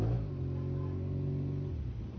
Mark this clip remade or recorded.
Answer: recorded